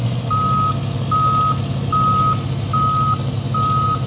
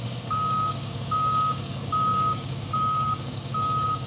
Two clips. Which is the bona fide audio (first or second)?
first